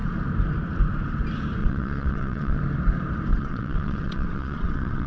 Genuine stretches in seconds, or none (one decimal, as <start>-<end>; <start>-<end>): 0.0-1.6; 2.6-3.3